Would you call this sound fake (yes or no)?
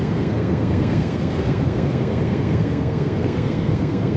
yes